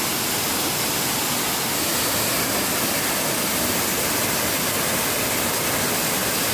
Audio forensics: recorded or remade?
recorded